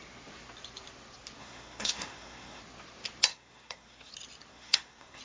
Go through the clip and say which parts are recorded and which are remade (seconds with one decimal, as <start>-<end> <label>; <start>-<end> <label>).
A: 0.0-1.4 recorded; 1.4-2.6 remade; 2.6-3.3 recorded; 3.3-4.1 remade; 4.1-4.5 recorded; 4.5-5.2 remade